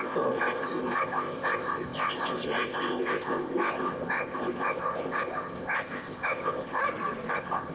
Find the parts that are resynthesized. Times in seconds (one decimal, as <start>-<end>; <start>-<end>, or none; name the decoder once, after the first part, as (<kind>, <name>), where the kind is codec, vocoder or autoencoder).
0.0-6.8 (codec, ZipCodec); 7.3-7.7